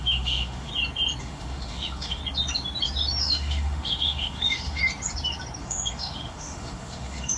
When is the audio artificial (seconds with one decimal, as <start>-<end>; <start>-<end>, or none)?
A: 0.0-0.7; 1.2-2.2; 3.2-4.8; 5.6-7.4